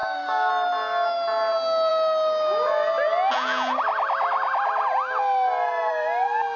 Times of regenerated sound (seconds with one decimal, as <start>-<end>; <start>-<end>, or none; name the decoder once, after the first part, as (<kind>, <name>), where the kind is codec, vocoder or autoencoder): 0.0-0.5 (codec, DAC)